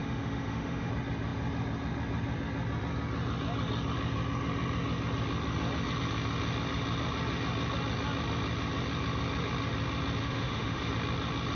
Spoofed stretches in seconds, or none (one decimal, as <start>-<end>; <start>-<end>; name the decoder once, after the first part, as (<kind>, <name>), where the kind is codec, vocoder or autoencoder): 0.0-0.9 (autoencoder, DAC-VAE); 10.2-10.9